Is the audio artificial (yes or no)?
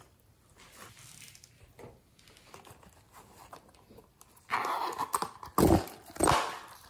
no